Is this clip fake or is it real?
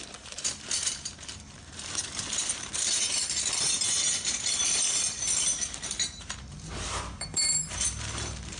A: fake